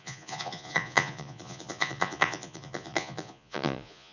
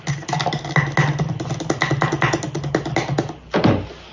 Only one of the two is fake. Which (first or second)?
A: first